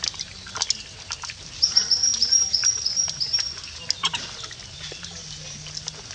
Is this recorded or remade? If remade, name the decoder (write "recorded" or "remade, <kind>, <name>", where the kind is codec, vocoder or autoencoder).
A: recorded